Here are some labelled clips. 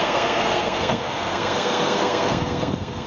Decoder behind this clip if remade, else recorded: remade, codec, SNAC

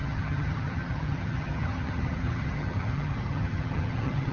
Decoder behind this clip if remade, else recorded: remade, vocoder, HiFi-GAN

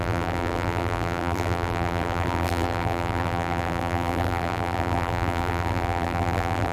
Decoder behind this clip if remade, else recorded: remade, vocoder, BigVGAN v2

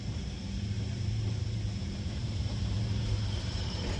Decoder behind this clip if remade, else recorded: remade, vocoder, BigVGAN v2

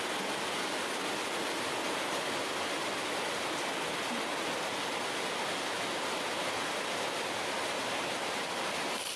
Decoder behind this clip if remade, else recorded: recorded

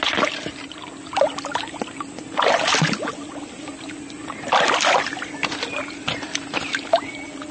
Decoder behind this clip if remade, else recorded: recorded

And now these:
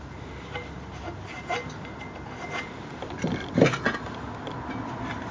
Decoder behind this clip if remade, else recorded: remade, vocoder, BigVGAN v2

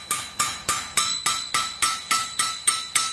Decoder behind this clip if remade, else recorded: remade, autoencoder, DAC-VAE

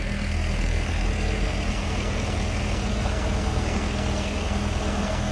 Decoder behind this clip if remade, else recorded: remade, codec, SNAC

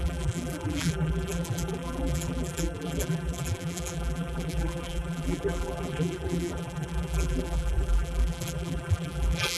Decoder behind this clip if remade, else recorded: remade, vocoder, BigVGAN v2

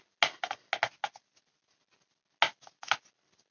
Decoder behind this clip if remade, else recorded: recorded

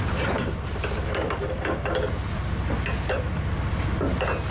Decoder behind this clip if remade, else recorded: recorded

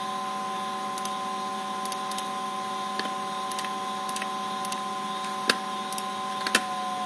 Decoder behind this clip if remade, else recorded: recorded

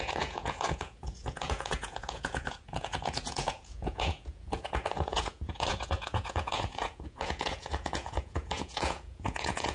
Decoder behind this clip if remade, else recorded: remade, vocoder, Vocos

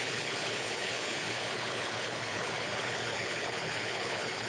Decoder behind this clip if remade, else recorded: remade, codec, HILCodec